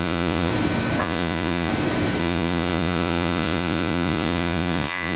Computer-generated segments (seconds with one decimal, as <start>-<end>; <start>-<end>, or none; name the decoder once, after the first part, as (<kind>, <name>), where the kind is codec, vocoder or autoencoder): 0.0-0.5 (vocoder, Vocos); 1.0-1.7; 2.2-5.2